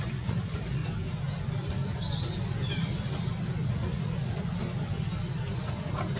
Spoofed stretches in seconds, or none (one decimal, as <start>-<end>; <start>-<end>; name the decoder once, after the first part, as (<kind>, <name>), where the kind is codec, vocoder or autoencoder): 0.0-0.8 (vocoder, Vocos); 3.7-4.6